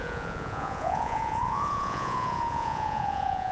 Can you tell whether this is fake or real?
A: fake